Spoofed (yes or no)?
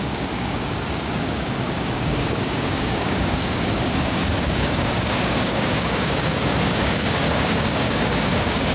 yes